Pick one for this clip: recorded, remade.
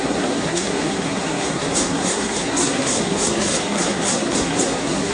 remade